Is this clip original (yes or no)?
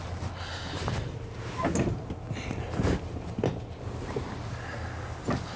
yes